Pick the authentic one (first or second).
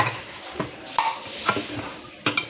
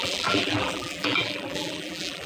first